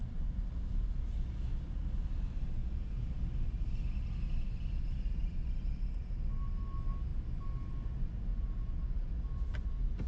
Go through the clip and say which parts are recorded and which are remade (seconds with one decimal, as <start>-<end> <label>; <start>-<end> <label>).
0.0-2.6 recorded; 2.6-3.1 remade; 3.1-8.3 recorded; 8.3-9.1 remade; 9.1-10.1 recorded